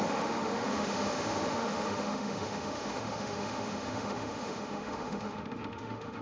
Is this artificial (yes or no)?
yes